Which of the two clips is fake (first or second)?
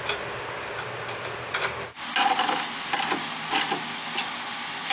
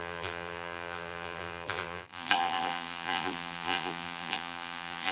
second